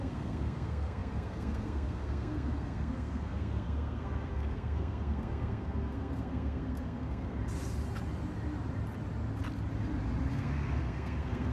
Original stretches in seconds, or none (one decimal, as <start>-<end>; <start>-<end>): 7.4-10.3